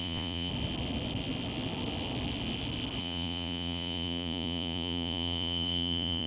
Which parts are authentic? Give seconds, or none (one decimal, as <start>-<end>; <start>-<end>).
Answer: 0.5-3.0